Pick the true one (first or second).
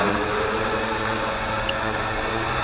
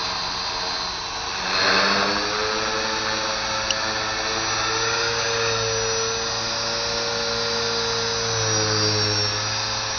second